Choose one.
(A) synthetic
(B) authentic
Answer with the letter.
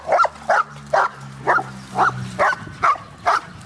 B